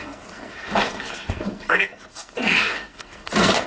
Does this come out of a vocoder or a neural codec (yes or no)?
yes